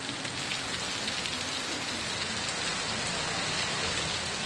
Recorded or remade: recorded